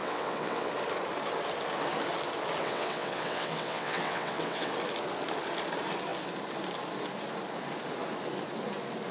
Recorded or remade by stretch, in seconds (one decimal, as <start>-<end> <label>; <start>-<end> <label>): 0.0-0.7 remade; 0.7-2.6 recorded; 2.6-4.7 remade; 4.7-9.1 recorded